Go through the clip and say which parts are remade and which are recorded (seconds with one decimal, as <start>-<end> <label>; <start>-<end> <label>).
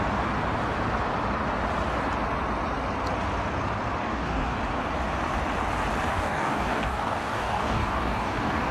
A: 0.0-4.0 recorded; 4.0-4.6 remade; 4.6-6.1 recorded; 6.1-8.7 remade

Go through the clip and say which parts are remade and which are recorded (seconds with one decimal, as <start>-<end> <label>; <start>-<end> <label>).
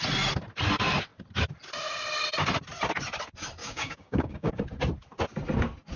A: 0.0-3.6 recorded; 3.6-4.6 remade; 4.6-6.0 recorded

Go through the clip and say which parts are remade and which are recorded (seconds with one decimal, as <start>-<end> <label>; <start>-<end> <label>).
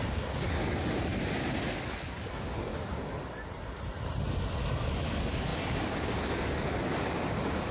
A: 0.0-1.1 remade; 1.1-1.6 recorded; 1.6-2.7 remade; 2.7-5.0 recorded; 5.0-7.7 remade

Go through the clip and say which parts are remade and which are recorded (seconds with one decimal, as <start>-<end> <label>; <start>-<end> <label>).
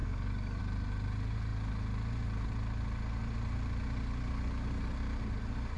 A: 0.0-0.6 remade; 0.6-5.8 recorded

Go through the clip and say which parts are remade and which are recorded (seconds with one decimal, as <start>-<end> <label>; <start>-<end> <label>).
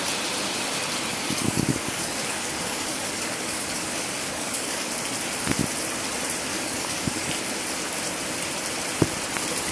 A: 0.0-1.1 recorded; 1.1-4.9 remade; 4.9-6.5 recorded; 6.5-7.3 remade; 7.3-9.7 recorded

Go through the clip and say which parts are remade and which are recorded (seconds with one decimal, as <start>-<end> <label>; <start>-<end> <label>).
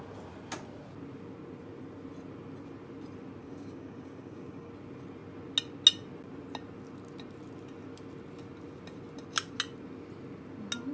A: 0.0-3.4 recorded; 3.4-4.7 remade; 4.7-10.9 recorded